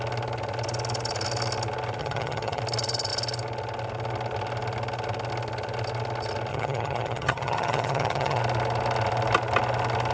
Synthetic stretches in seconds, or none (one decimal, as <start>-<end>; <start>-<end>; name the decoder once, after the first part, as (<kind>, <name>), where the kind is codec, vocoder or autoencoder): 2.0-2.6 (vocoder, HiFi-GAN); 6.5-8.4